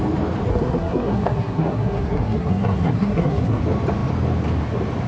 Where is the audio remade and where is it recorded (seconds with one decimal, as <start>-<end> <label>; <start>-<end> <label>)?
0.0-0.5 recorded; 0.5-3.6 remade; 3.6-5.1 recorded